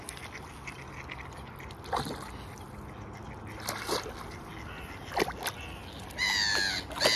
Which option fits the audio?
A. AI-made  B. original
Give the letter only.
B